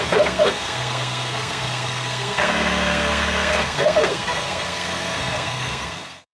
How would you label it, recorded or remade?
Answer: remade